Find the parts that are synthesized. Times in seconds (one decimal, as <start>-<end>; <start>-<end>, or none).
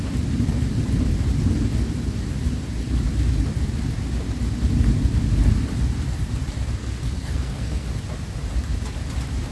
6.8-7.9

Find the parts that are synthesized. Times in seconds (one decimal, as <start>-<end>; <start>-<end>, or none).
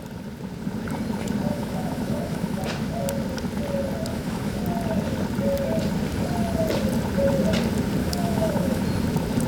1.5-2.6; 4.1-4.6; 8.0-8.8